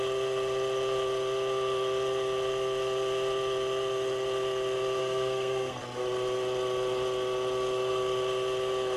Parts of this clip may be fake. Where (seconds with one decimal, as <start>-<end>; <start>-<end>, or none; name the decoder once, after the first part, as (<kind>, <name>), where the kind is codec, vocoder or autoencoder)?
5.0-5.8 (codec, SNAC)